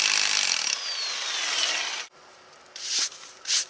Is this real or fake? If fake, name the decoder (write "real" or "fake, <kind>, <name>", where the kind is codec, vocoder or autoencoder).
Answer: real